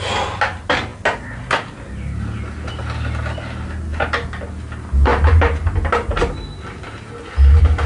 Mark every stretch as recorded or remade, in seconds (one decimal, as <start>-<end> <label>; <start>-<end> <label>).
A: 0.0-7.9 recorded

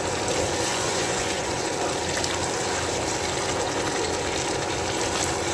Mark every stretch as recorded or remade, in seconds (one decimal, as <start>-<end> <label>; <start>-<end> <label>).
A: 0.0-0.7 recorded; 0.7-1.7 remade; 1.7-5.5 recorded

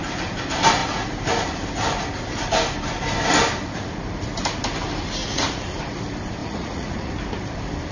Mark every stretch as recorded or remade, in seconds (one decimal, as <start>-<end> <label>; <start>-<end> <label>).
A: 0.0-5.2 recorded; 5.2-5.8 remade; 5.8-6.4 recorded; 6.4-7.1 remade; 7.1-7.9 recorded